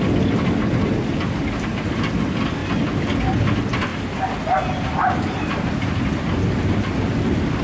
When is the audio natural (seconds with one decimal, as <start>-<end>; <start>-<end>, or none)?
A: 0.0-7.6